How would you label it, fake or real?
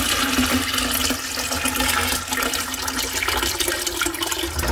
real